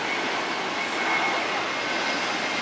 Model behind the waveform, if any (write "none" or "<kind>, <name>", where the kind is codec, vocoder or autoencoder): none